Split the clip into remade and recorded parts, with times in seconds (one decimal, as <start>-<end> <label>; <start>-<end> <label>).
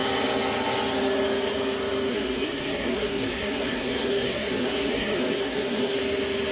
0.0-2.1 recorded; 2.1-6.0 remade; 6.0-6.5 recorded